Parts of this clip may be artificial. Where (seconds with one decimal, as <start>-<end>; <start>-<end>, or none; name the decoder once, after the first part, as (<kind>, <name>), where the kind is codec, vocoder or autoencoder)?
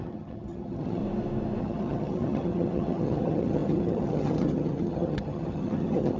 0.0-1.0 (vocoder, HiFi-GAN); 1.6-6.2